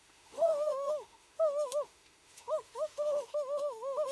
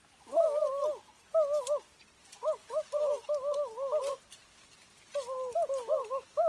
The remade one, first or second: first